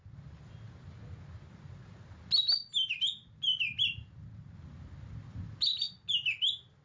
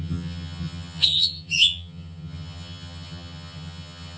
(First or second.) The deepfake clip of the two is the second